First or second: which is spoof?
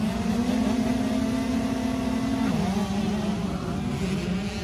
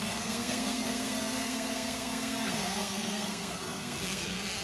second